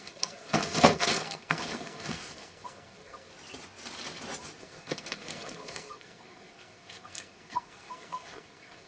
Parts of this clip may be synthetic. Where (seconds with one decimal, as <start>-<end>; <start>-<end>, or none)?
0.0-3.3; 4.6-8.9